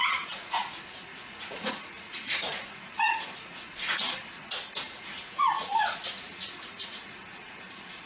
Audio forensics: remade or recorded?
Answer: remade